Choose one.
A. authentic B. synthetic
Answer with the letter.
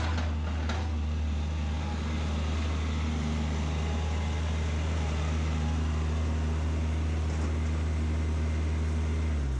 A